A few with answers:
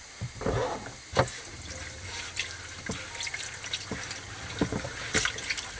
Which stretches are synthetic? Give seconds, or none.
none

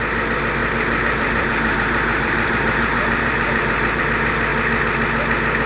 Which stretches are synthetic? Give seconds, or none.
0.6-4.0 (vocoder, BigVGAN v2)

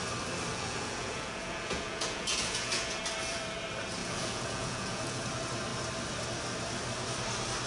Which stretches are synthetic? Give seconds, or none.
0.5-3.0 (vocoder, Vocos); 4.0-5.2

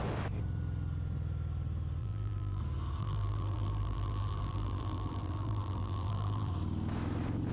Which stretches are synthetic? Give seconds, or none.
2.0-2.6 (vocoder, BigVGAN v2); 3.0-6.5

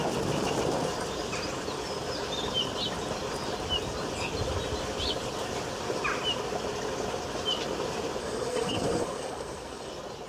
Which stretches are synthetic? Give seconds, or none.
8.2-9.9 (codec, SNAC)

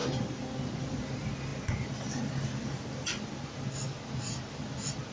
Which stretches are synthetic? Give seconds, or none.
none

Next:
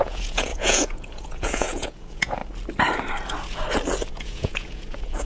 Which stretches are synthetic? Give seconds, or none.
0.0-2.4 (vocoder, Vocos); 4.1-5.3